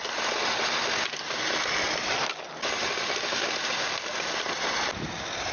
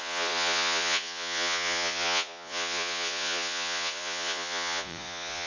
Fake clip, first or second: second